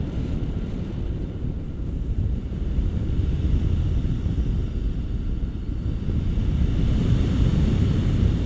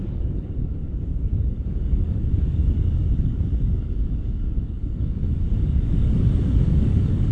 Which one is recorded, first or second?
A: first